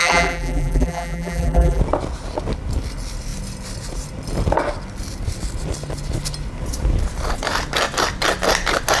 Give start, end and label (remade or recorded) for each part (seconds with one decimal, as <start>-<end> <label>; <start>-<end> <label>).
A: 0.0-1.8 remade; 1.8-9.0 recorded